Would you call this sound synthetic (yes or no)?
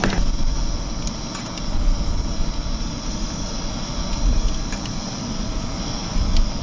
no